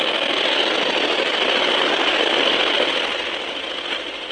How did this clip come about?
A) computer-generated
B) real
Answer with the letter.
B